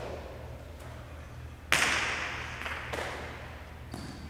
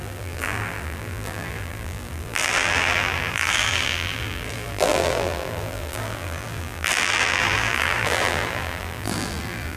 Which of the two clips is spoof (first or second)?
second